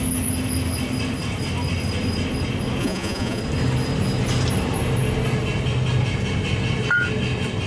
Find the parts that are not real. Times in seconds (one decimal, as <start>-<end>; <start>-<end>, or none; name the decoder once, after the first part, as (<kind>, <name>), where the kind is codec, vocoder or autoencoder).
2.8-3.4 (vocoder, Vocos)